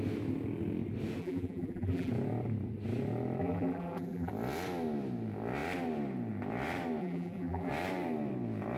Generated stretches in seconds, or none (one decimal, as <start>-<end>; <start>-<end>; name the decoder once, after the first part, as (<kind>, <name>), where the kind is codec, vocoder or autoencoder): 1.2-2.1 (vocoder, BigVGAN v2); 3.4-4.3; 7.0-7.7